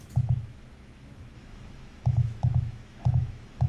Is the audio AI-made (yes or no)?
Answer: yes